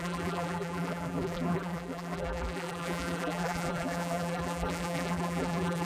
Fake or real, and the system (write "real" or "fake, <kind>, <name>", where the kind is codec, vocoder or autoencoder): fake, vocoder, BigVGAN v2